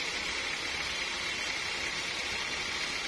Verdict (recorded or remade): recorded